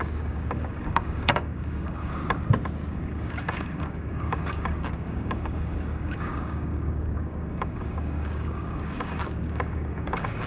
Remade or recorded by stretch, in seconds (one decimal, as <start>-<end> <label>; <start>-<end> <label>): 0.0-2.2 remade; 2.2-2.9 recorded; 2.9-10.5 remade